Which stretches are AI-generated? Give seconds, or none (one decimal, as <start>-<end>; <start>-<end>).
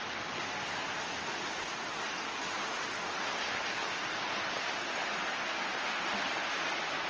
none